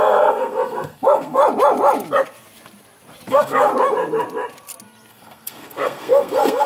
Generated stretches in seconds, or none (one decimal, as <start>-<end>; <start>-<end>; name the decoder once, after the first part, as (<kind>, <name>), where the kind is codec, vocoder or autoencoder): 0.0-1.4 (codec, SNAC); 3.3-3.7; 5.1-6.7

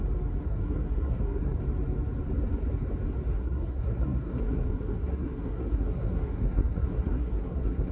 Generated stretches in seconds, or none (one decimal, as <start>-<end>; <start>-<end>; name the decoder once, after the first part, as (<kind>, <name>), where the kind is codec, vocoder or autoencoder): 0.4-1.6 (codec, SNAC); 3.3-7.9

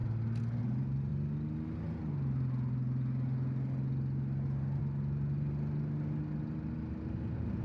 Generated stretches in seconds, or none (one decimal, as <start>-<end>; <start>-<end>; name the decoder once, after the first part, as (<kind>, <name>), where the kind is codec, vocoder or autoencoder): none

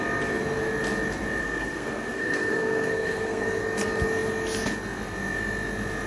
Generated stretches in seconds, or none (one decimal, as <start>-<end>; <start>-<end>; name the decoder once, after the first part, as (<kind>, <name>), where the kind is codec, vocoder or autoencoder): 1.4-3.6 (codec, SNAC)